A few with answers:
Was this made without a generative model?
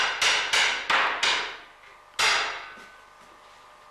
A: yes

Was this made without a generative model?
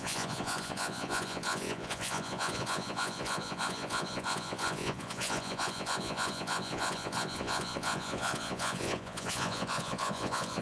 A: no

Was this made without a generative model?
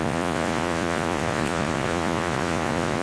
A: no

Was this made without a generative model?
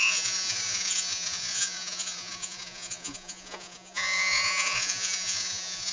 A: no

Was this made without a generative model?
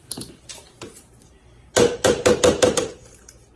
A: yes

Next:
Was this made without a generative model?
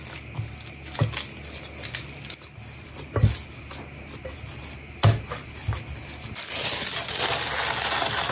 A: yes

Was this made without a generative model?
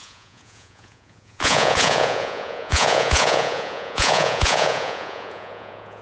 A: no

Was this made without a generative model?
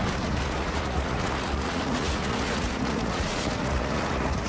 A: no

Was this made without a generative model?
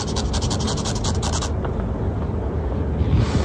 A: yes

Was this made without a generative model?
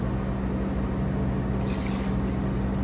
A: yes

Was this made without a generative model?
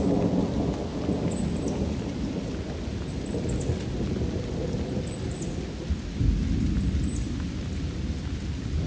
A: yes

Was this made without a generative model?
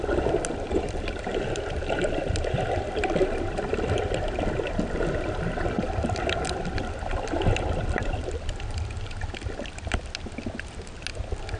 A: yes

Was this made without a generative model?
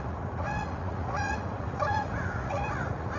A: no